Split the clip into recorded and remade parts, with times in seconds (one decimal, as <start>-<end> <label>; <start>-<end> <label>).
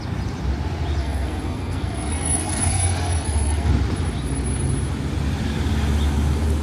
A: 0.0-1.0 recorded; 1.0-3.7 remade; 3.7-6.6 recorded